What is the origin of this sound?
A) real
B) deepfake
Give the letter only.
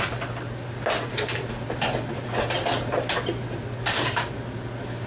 A